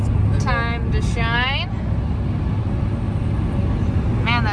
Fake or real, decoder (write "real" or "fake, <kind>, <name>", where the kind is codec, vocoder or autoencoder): real